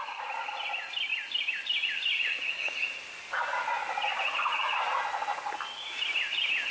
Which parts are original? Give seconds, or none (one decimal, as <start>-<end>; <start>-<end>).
1.1-4.2; 4.9-5.9